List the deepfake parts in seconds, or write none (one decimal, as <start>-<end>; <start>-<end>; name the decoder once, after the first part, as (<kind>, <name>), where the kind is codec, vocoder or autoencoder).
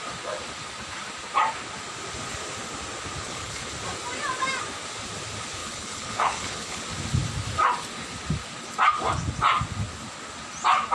3.2-3.7 (codec, HILCodec); 5.6-6.8